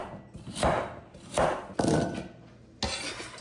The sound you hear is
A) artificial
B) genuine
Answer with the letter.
B